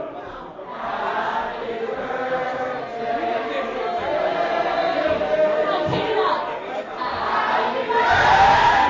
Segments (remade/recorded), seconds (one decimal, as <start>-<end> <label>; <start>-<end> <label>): 0.0-8.3 recorded; 8.3-8.9 remade